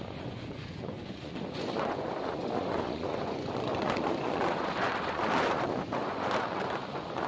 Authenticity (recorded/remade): remade